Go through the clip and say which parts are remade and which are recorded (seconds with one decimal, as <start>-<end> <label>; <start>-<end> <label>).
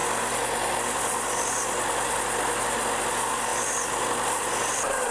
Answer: 0.0-5.1 recorded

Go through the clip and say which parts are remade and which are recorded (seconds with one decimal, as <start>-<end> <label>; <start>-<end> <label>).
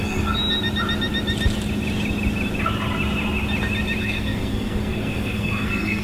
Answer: 0.0-0.4 remade; 0.4-4.0 recorded; 4.0-6.0 remade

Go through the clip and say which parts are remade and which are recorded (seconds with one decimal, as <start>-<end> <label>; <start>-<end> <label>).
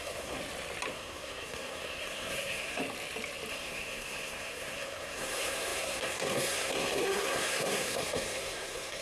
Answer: 0.0-0.4 remade; 0.4-0.9 recorded; 0.9-2.8 remade; 2.8-3.5 recorded; 3.5-9.0 remade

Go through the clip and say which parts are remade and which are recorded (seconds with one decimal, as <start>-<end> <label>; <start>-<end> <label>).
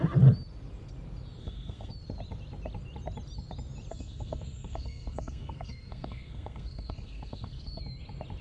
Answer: 0.0-1.4 recorded; 1.4-1.9 remade; 1.9-3.9 recorded; 3.9-7.8 remade; 7.8-8.4 recorded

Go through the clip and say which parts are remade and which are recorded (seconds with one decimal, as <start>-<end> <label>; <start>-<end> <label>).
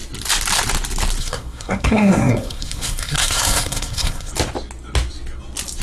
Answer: 0.0-1.2 recorded; 1.2-4.3 remade; 4.3-5.8 recorded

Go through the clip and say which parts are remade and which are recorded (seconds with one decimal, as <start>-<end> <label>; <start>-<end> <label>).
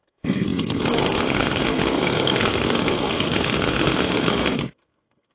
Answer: 0.0-5.3 remade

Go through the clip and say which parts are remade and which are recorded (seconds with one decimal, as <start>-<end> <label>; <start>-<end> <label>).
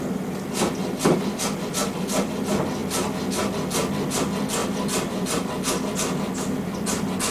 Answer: 0.0-7.3 recorded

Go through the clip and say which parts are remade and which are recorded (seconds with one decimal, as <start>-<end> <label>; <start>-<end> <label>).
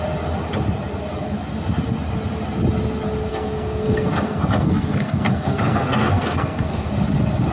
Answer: 0.0-3.3 recorded; 3.3-6.9 remade; 6.9-7.5 recorded